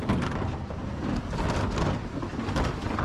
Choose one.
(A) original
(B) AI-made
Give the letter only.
A